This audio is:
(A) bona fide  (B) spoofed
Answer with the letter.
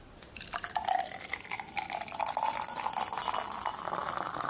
A